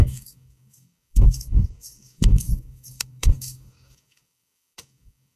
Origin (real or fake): fake